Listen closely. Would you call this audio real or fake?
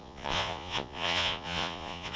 fake